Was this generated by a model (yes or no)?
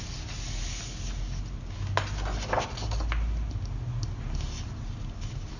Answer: no